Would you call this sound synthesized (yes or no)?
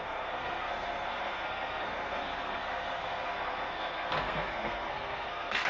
yes